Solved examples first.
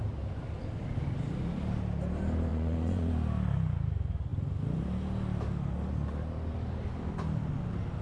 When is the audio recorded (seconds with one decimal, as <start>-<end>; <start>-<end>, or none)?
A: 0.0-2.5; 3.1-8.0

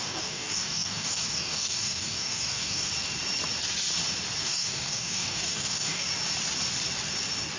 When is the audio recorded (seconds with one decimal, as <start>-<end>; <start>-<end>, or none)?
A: 2.9-4.4; 6.1-7.6

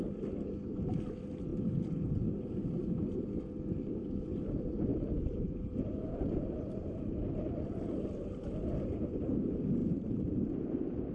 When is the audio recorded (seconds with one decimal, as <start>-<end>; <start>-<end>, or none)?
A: 0.0-11.1

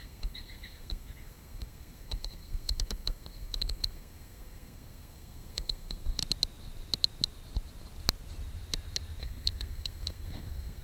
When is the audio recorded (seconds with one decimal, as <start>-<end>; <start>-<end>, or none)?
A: 6.2-9.2

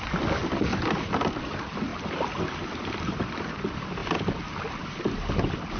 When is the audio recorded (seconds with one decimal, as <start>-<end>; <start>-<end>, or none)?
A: 0.0-5.8

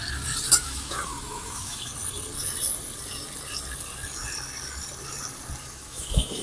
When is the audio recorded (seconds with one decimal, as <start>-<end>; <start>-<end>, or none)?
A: 0.0-0.6; 1.9-5.6

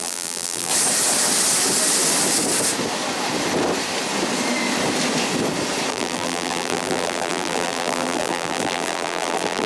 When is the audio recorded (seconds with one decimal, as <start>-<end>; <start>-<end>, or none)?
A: 0.7-5.9

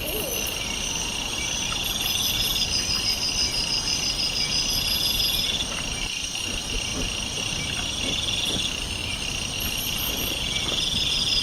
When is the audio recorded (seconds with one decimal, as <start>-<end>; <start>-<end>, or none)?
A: 0.0-11.4